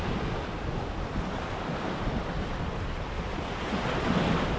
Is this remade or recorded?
recorded